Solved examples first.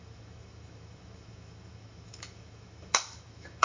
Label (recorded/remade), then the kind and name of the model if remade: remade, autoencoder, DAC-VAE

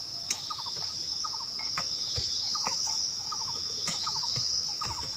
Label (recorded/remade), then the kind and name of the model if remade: remade, autoencoder, DAC-VAE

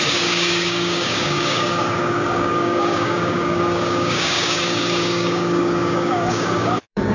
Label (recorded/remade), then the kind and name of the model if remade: remade, codec, DAC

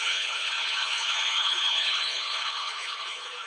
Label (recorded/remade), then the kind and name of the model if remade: remade, codec, HILCodec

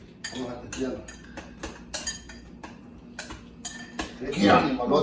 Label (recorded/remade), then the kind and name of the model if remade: recorded